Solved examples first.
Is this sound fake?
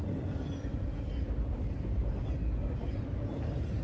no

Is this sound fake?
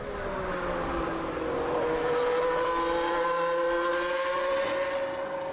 no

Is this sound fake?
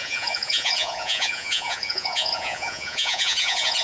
yes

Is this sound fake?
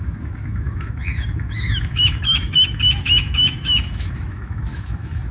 yes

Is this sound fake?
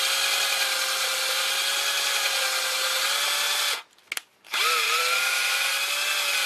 no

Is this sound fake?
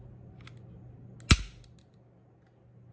no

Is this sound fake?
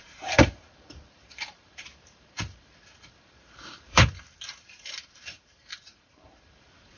yes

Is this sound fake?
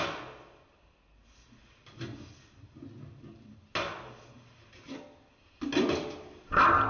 no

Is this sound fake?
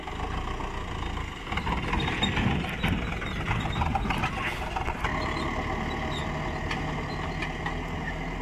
no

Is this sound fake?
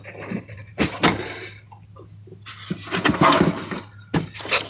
no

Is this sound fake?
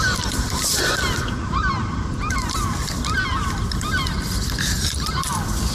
yes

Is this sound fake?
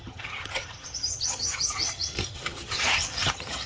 yes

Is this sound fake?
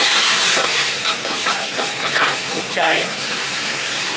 yes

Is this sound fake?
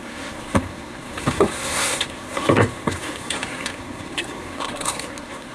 yes